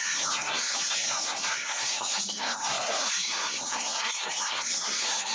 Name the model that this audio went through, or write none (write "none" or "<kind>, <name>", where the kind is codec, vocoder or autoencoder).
codec, SNAC